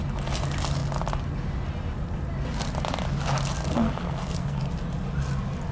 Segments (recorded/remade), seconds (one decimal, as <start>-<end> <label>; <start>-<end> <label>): 0.0-3.7 recorded; 3.7-4.6 remade; 4.6-5.7 recorded